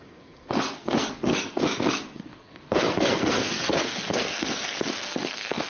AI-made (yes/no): yes